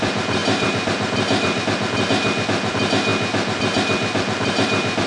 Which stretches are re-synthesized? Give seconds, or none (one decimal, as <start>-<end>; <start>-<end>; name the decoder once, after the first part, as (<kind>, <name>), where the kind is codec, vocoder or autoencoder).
0.4-1.6 (vocoder, BigVGAN v2)